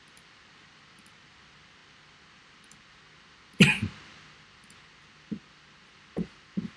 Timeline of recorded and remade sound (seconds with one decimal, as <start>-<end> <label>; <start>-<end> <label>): 0.0-6.8 recorded